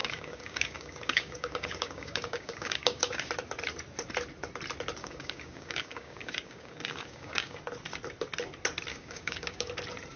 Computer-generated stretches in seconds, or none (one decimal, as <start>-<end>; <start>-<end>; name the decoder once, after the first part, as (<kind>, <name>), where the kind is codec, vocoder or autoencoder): 0.0-3.3 (codec, DAC); 5.0-7.6; 8.9-9.7